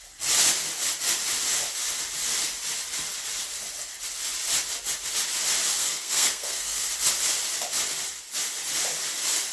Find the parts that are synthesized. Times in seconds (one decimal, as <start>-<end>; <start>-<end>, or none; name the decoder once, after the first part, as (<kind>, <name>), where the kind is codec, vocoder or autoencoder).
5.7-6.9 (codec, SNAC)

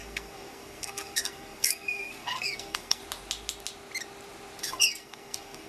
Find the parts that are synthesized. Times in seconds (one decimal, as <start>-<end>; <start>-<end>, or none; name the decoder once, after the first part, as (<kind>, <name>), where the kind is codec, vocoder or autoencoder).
0.0-3.0 (codec, SNAC); 4.6-5.7

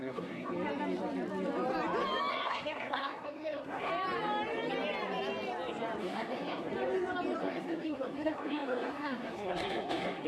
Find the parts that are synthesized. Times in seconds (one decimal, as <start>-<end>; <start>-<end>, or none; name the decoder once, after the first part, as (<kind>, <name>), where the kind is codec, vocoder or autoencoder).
0.0-0.5 (codec, SNAC); 2.3-3.9; 6.0-6.7; 7.4-10.3

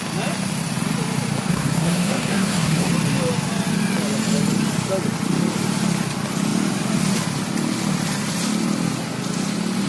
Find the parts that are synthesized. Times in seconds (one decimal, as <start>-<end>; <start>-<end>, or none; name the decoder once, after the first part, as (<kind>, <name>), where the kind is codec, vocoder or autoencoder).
1.5-2.9 (codec, SNAC)